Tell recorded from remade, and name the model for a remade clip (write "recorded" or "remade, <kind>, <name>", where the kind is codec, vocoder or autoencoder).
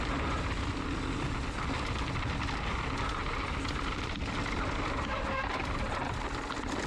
recorded